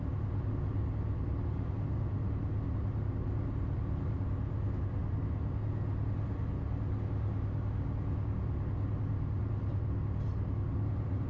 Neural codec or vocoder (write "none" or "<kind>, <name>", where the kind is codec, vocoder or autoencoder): none